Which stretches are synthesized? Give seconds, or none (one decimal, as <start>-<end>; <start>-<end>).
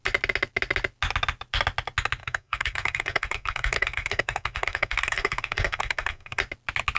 2.2-6.4